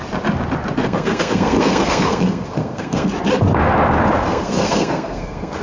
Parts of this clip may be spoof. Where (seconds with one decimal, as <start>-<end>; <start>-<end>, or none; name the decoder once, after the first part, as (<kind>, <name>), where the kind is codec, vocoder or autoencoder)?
0.8-3.1 (codec, SNAC); 4.2-5.6